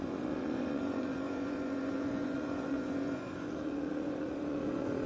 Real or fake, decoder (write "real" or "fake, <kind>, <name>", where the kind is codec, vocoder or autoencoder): fake, vocoder, Vocos